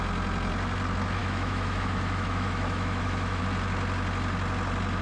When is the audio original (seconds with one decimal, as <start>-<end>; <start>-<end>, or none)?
0.0-1.2; 3.4-5.0